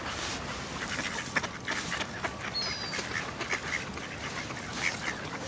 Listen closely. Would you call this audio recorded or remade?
recorded